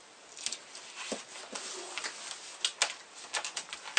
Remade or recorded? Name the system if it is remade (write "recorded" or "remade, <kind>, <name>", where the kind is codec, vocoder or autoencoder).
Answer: recorded